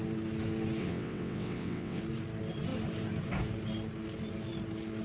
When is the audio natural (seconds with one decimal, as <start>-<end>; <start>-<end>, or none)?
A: 0.0-0.8; 2.0-5.0